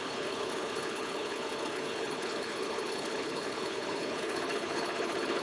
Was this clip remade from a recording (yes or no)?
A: yes